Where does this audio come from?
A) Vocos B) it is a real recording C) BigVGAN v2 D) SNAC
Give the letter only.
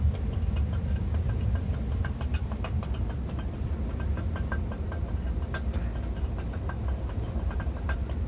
B